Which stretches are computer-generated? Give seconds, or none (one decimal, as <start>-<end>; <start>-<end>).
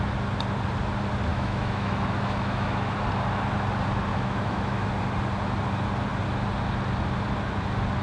1.3-2.9; 4.1-4.9